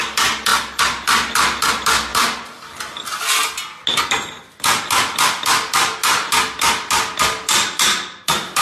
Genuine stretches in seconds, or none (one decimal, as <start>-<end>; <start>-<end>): 0.0-8.6